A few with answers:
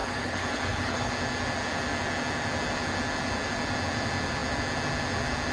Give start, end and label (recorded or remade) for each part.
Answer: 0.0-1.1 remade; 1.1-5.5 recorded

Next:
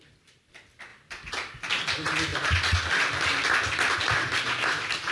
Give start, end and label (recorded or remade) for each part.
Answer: 0.0-5.1 recorded

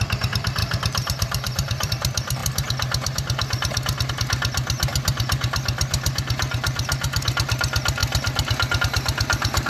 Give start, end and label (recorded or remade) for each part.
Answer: 0.0-0.6 recorded; 0.6-1.9 remade; 1.9-9.7 recorded

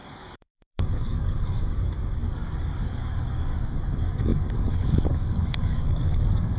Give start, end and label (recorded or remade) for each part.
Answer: 0.0-6.6 remade

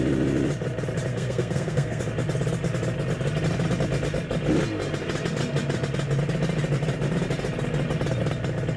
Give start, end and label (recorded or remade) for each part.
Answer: 0.0-1.1 recorded; 1.1-2.0 remade; 2.0-8.8 recorded

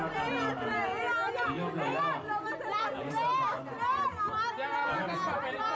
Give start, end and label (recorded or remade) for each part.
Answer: 0.0-5.8 recorded